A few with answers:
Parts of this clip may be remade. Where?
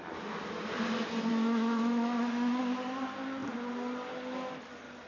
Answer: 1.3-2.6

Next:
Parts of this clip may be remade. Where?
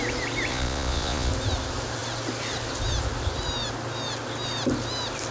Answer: 0.5-1.3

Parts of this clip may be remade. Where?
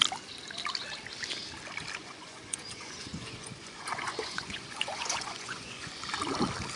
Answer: 2.0-6.1